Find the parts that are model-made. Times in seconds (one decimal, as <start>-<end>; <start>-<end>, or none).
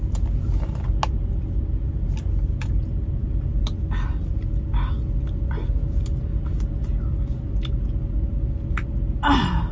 none